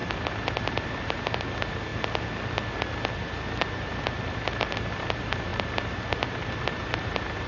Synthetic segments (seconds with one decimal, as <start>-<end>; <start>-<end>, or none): 0.6-1.9; 3.7-7.5